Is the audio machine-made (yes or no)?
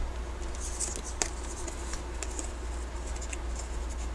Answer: no